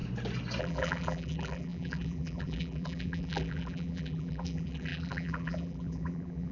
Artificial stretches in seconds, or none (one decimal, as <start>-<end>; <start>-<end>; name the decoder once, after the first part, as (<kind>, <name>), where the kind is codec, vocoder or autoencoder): 0.6-6.5 (vocoder, BigVGAN v2)